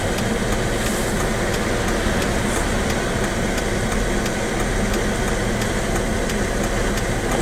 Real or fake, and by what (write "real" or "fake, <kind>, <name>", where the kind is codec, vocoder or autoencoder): real